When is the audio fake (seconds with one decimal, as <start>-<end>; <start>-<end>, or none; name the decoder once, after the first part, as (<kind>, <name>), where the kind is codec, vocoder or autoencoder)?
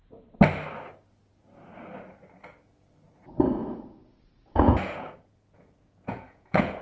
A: 4.1-6.8 (vocoder, Vocos)